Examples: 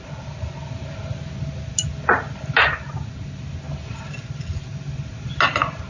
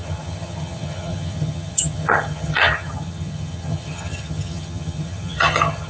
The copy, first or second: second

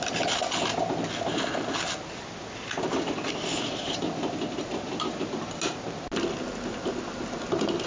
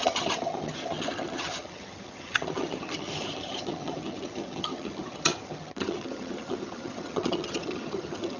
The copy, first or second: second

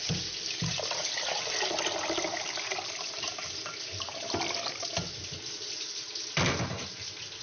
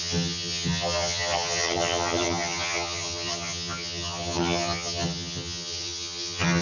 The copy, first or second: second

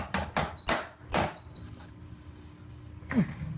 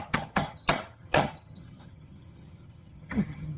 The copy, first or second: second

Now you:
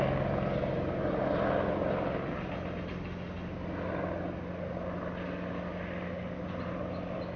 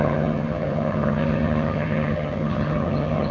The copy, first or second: second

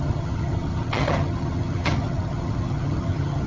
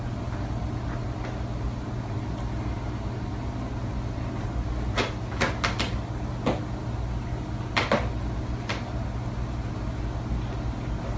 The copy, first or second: first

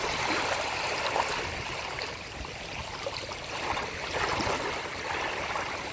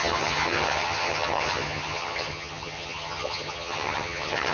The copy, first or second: second